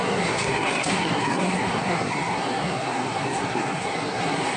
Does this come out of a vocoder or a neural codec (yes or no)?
yes